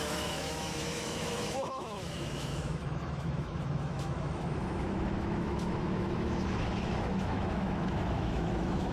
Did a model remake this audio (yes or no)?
yes